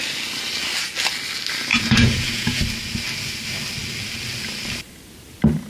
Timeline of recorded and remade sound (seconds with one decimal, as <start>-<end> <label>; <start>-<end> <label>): 0.0-1.7 recorded; 1.7-2.6 remade; 2.6-5.7 recorded